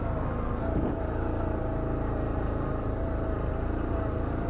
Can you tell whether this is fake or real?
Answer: real